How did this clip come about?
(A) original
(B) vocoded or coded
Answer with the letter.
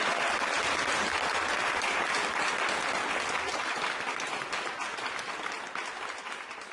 A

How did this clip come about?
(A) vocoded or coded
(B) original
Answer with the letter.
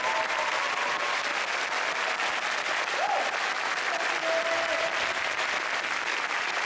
B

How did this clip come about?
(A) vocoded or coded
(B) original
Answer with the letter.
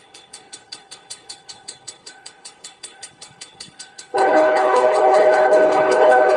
A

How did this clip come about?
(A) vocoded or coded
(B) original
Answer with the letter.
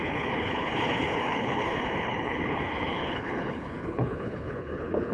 A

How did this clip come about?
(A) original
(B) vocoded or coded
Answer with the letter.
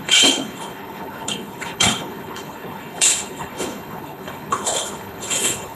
B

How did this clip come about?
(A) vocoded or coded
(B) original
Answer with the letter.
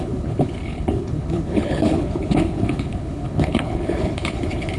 A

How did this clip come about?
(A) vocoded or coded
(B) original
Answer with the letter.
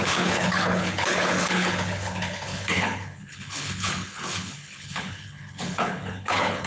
A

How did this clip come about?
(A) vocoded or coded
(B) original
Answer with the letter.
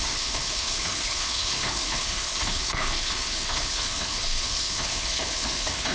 A